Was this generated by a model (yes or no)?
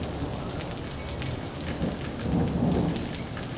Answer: no